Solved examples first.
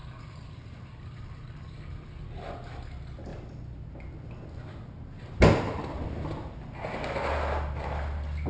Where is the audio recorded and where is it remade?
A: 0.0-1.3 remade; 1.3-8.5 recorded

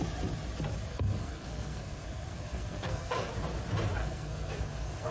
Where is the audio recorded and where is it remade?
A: 0.0-0.9 recorded; 0.9-3.3 remade; 3.3-4.0 recorded; 4.0-5.1 remade

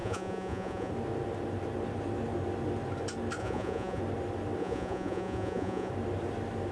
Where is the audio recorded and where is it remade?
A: 0.0-0.9 remade; 0.9-3.4 recorded; 3.4-4.0 remade; 4.0-4.6 recorded; 4.6-5.9 remade; 5.9-6.7 recorded

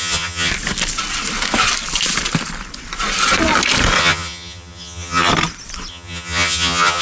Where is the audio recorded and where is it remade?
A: 0.0-0.5 remade; 0.5-4.0 recorded; 4.0-5.3 remade; 5.3-5.9 recorded; 5.9-7.0 remade

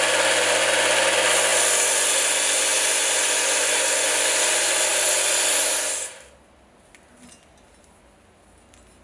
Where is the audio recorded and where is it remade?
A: 0.0-9.0 recorded

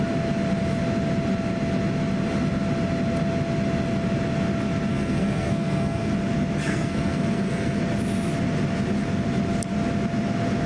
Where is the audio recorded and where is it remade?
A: 0.0-4.9 recorded; 4.9-6.1 remade; 6.1-6.6 recorded; 6.6-7.8 remade; 7.8-10.7 recorded

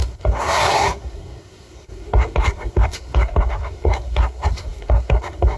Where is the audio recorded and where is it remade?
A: 0.0-5.6 remade